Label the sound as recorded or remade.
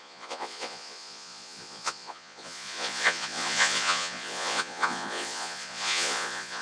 remade